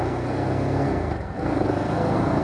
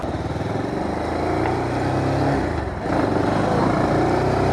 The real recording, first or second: second